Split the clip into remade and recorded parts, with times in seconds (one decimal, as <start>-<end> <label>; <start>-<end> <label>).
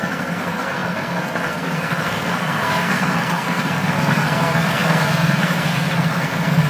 0.0-6.7 remade